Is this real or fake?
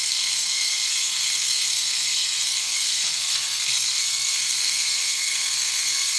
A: fake